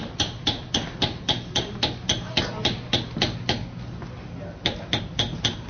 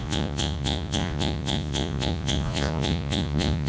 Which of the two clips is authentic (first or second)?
first